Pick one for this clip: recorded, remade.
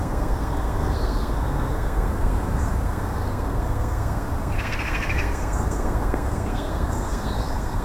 remade